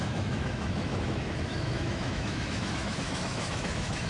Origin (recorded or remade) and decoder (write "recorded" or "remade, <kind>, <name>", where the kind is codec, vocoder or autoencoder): remade, autoencoder, DAC-VAE